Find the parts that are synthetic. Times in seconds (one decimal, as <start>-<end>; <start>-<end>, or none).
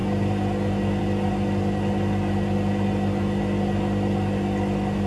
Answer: none